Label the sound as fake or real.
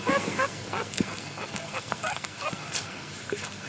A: fake